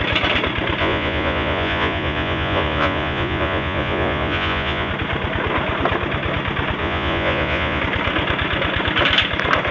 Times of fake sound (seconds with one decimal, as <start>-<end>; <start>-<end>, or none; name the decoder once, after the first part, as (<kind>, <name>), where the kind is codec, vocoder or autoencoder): 0.8-4.9 (vocoder, Vocos); 6.8-7.8